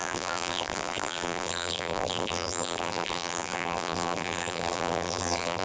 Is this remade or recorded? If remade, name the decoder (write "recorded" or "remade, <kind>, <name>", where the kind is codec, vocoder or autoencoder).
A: remade, vocoder, BigVGAN v2